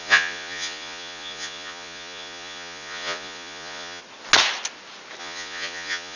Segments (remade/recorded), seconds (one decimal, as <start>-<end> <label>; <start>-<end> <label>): 0.0-4.0 remade; 4.0-5.2 recorded; 5.2-6.2 remade

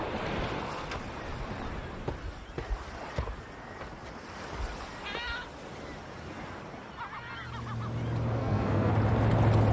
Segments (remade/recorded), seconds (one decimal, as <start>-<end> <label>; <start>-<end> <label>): 0.0-8.4 recorded; 8.4-8.9 remade; 8.9-9.7 recorded

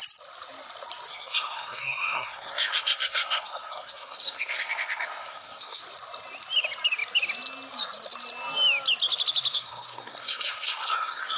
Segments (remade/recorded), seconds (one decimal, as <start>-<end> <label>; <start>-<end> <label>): 0.0-1.1 recorded; 1.1-5.8 remade; 5.8-9.5 recorded; 9.5-11.4 remade

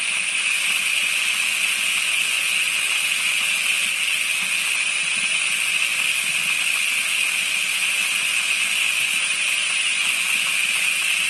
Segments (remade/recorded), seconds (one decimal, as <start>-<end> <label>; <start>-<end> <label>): 0.0-5.9 remade; 5.9-8.0 recorded; 8.0-11.3 remade